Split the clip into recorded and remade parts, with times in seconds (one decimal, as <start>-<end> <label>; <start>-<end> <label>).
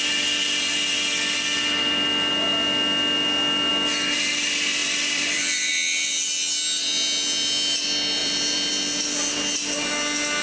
0.0-4.8 recorded; 4.8-5.7 remade; 5.7-8.2 recorded; 8.2-8.7 remade; 8.7-10.4 recorded